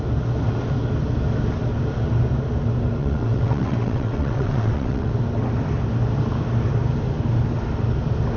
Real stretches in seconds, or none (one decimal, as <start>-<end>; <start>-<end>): 0.0-3.0; 5.1-8.4